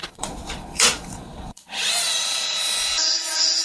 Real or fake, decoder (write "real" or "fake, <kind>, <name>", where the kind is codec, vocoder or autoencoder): fake, vocoder, Vocos